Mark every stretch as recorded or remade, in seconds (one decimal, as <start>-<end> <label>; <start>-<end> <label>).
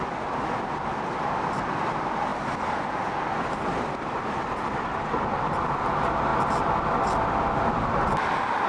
0.0-8.7 recorded